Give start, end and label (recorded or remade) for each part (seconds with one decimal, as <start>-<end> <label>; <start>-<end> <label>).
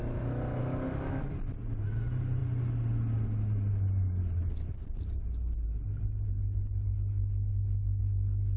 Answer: 0.0-0.6 recorded; 0.6-1.2 remade; 1.2-7.5 recorded; 7.5-8.0 remade; 8.0-8.6 recorded